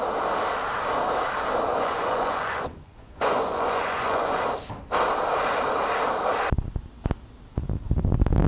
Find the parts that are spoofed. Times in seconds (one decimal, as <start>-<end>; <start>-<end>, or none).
1.7-4.4